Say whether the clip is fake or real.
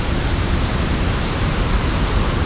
fake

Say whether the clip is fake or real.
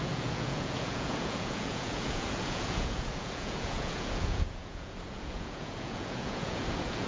fake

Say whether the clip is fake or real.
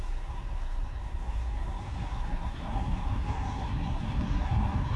fake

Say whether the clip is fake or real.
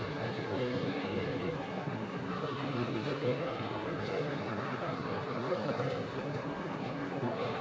fake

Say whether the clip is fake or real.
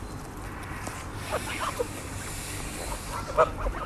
real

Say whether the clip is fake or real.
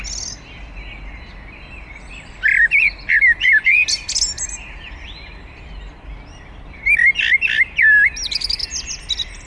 real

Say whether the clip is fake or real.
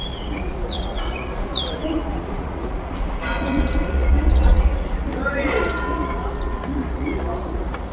fake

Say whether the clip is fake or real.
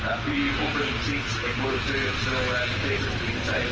real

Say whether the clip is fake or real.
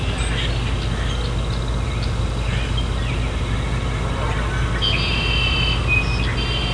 real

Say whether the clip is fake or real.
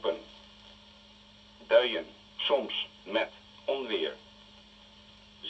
real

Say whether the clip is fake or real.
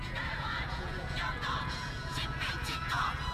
fake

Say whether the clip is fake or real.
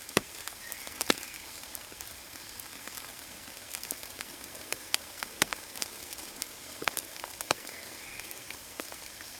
fake